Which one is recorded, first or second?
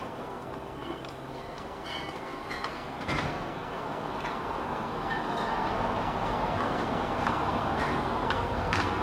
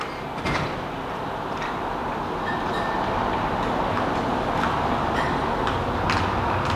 second